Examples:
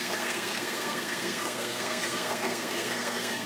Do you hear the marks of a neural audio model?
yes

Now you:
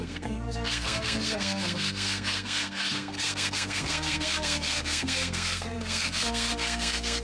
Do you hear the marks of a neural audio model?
yes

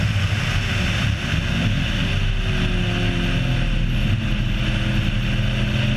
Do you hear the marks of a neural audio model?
no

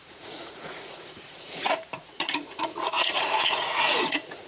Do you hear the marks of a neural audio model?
yes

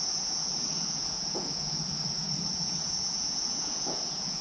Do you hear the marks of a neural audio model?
yes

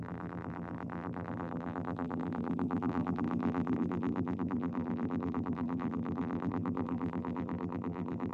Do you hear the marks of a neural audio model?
yes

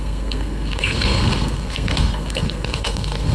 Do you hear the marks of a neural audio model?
yes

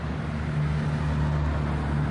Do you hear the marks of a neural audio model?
no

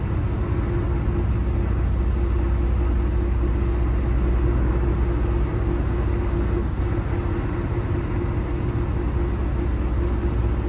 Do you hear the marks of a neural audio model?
no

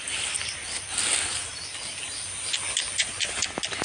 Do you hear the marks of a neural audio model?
no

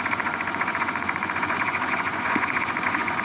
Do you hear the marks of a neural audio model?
yes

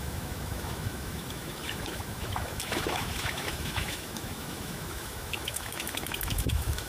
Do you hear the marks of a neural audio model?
yes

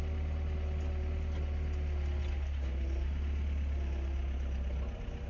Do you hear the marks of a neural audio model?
no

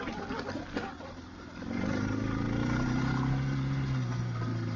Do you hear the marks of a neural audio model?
no